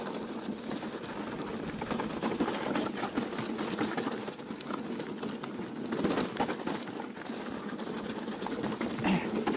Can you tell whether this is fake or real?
real